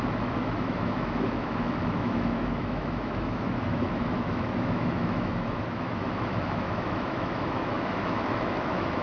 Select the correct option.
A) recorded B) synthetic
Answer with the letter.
B